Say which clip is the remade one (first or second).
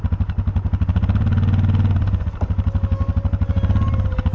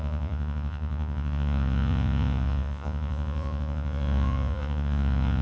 second